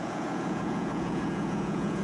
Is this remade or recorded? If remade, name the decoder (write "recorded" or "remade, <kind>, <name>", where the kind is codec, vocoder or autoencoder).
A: remade, vocoder, Vocos